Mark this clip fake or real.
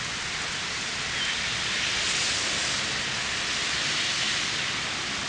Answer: real